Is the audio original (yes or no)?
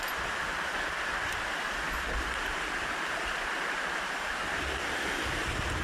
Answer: yes